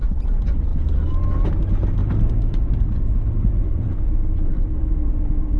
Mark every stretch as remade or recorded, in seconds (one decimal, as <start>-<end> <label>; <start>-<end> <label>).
0.0-2.0 recorded; 2.0-5.6 remade